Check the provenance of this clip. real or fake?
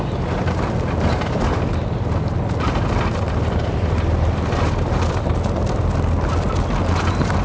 real